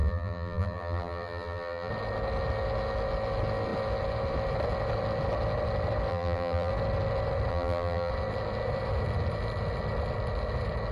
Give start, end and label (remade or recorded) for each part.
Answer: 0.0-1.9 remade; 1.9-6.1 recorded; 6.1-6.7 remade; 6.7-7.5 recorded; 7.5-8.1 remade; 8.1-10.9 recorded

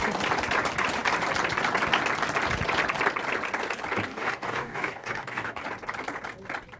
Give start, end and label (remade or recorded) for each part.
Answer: 0.0-4.1 recorded; 4.1-5.6 remade; 5.6-6.8 recorded

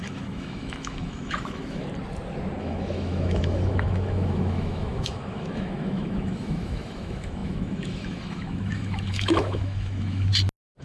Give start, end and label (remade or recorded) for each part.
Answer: 0.0-1.8 remade; 1.8-2.6 recorded; 2.6-10.3 remade; 10.3-10.8 recorded

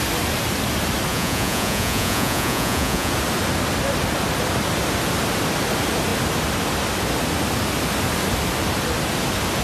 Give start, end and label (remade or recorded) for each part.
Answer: 0.0-1.1 recorded; 1.1-3.1 remade; 3.1-9.6 recorded

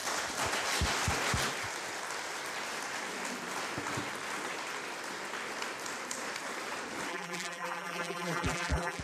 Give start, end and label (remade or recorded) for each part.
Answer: 0.0-7.1 recorded; 7.1-9.0 remade